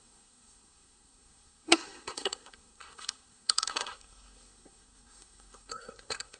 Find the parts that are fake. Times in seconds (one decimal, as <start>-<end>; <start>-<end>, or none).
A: 0.0-6.4